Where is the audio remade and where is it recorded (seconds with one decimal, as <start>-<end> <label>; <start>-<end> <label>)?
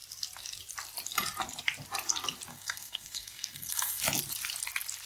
0.0-2.5 recorded; 2.5-4.0 remade; 4.0-5.1 recorded